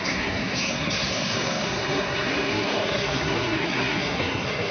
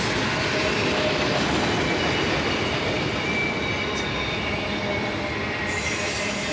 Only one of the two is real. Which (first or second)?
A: second